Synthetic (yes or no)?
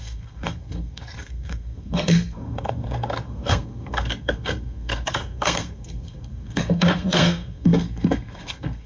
yes